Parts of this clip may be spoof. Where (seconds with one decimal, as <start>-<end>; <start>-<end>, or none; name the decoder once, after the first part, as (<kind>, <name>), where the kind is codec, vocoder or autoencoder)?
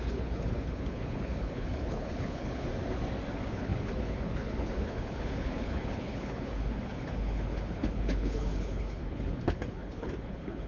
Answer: 0.0-2.7 (codec, HILCodec); 3.3-10.7